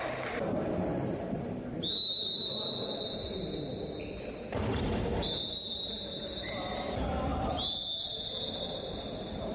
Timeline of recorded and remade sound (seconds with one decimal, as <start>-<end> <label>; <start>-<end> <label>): 0.0-9.5 recorded